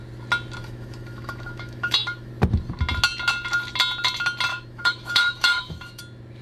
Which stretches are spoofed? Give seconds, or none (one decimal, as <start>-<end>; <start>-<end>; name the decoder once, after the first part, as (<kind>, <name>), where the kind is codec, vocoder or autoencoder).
0.6-2.3 (autoencoder, DAC-VAE); 4.5-6.0